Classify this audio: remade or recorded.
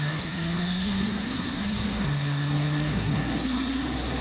remade